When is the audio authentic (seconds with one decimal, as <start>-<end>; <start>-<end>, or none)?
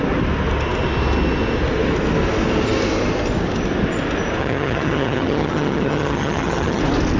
0.0-4.4; 6.8-7.2